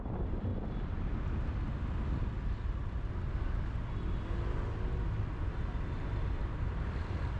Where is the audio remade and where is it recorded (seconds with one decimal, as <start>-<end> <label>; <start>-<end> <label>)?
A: 0.0-0.5 remade; 0.5-3.1 recorded; 3.1-3.8 remade; 3.8-5.9 recorded; 5.9-7.4 remade